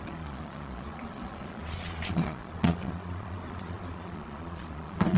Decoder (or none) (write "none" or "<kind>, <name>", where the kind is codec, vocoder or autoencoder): vocoder, Vocos